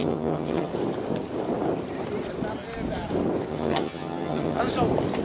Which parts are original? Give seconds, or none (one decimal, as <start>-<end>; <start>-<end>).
0.7-3.5; 4.6-5.2

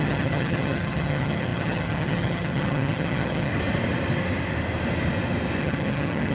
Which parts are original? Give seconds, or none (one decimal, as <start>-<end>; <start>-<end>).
3.5-5.6

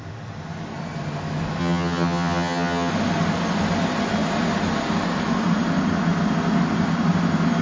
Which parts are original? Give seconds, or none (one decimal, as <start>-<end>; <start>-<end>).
0.0-1.6; 2.9-7.6

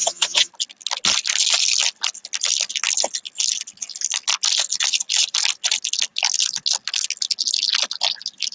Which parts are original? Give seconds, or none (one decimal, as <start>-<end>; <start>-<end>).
0.5-8.5

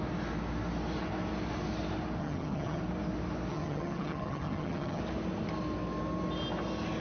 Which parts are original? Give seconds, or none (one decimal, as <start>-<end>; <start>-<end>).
0.0-2.2; 2.8-3.5; 5.0-7.0

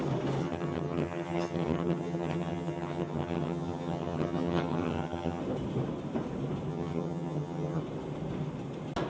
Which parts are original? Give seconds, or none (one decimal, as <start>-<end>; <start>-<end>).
0.0-0.4; 5.4-6.7; 7.8-9.1